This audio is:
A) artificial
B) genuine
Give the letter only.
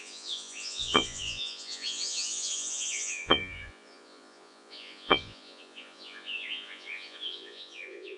A